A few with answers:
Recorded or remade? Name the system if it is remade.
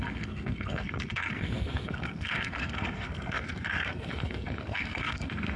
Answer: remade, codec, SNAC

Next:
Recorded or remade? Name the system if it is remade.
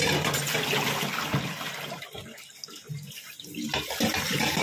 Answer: recorded